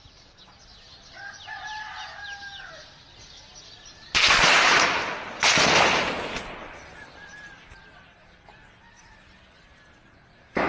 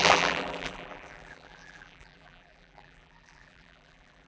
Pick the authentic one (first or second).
first